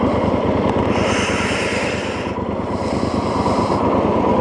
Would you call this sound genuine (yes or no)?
yes